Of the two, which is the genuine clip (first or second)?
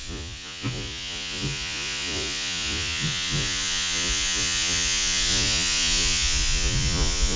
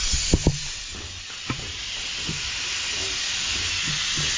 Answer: second